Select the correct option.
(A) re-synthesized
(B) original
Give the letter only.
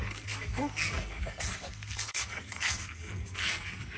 A